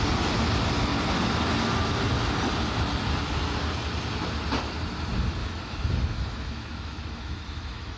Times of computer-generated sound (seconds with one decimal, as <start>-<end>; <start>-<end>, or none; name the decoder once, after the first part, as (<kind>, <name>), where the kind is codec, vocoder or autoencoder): 5.4-8.0 (autoencoder, DAC-VAE)